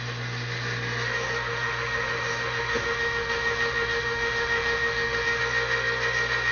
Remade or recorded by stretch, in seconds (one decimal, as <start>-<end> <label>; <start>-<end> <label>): 0.0-1.5 recorded; 1.5-5.4 remade; 5.4-6.5 recorded